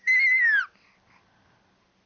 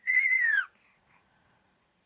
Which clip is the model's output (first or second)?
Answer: second